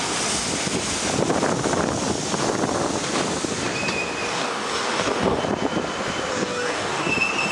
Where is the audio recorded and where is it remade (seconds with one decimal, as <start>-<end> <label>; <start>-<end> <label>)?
0.0-4.3 recorded; 4.3-5.4 remade; 5.4-6.3 recorded; 6.3-7.1 remade; 7.1-7.5 recorded